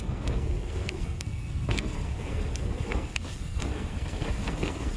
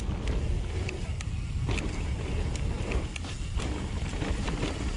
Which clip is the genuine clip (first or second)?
second